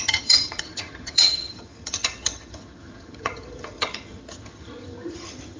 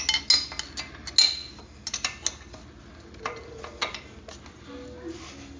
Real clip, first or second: second